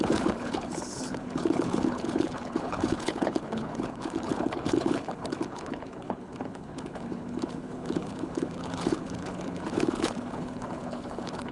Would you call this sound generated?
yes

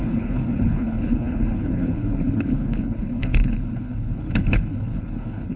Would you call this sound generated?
yes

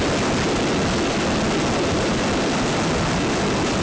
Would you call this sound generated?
no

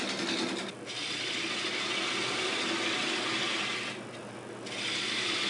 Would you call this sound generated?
no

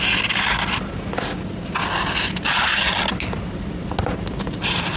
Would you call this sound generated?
no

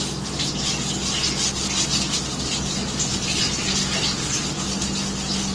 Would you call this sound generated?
no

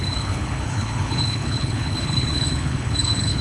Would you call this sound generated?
yes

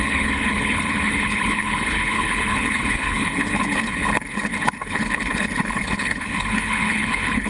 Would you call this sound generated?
yes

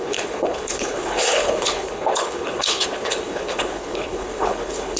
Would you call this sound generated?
yes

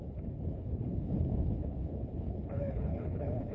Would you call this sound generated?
yes